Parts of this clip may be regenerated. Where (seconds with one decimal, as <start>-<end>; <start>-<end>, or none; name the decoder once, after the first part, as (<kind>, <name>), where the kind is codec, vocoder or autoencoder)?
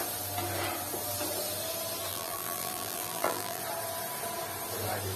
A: 2.1-3.6 (vocoder, BigVGAN v2)